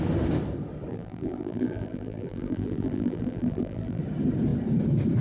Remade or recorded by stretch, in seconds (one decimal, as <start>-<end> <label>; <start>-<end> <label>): 0.0-0.9 recorded; 0.9-4.0 remade; 4.0-5.2 recorded